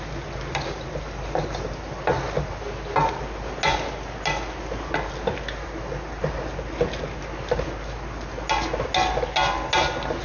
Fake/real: real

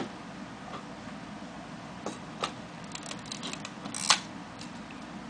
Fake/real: real